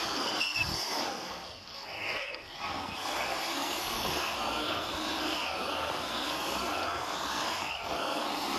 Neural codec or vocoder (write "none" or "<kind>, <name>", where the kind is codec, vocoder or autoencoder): codec, SNAC